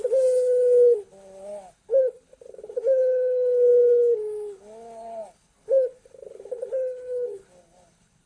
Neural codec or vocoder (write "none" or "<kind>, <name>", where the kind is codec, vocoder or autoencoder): codec, HILCodec